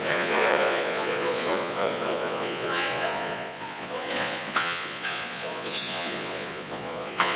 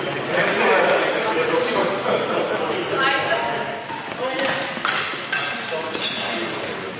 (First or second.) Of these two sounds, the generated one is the first